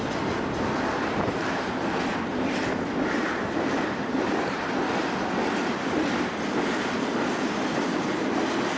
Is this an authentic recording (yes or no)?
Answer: no